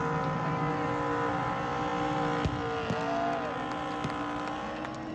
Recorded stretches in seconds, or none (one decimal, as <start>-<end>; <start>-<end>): 0.0-5.1